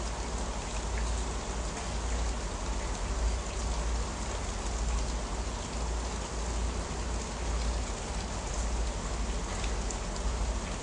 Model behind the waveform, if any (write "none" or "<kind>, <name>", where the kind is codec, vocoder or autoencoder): none